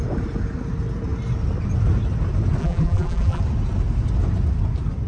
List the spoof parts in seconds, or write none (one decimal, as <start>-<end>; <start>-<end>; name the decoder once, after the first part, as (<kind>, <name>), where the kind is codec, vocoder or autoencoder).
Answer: 2.6-3.4 (vocoder, BigVGAN v2)